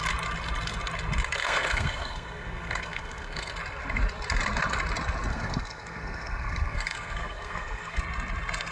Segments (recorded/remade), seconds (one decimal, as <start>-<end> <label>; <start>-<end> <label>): 0.0-1.4 recorded; 1.4-3.5 remade; 3.5-5.3 recorded; 5.3-8.0 remade; 8.0-8.7 recorded